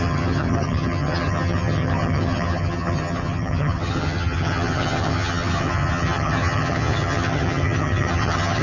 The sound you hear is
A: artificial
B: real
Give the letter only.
A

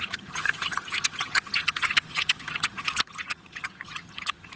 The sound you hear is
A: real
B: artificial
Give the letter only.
B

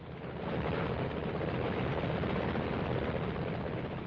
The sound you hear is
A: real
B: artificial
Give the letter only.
A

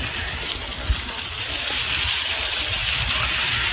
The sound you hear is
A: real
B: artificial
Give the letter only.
A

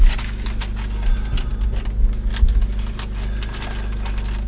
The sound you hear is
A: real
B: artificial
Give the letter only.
A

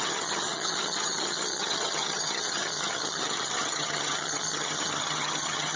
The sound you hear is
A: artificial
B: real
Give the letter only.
A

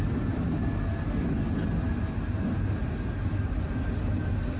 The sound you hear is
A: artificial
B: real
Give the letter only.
B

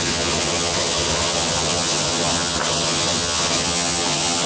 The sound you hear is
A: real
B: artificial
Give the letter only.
B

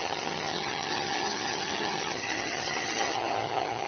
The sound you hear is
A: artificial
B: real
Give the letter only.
A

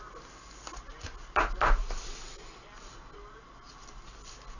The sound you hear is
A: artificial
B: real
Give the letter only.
B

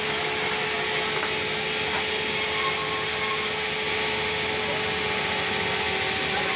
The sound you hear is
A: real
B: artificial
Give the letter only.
A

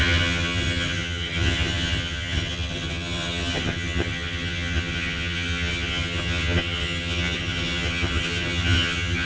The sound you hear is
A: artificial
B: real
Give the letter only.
A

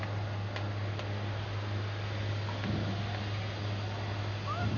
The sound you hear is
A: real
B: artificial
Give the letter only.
A